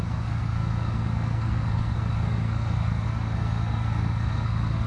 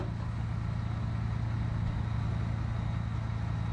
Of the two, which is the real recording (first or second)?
second